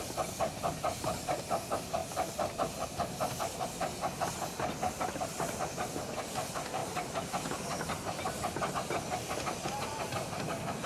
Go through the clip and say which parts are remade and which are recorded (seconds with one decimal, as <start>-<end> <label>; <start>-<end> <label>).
0.0-10.9 recorded

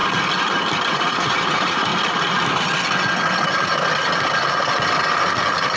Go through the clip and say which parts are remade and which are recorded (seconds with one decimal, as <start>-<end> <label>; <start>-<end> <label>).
0.0-0.9 recorded; 0.9-1.9 remade; 1.9-5.8 recorded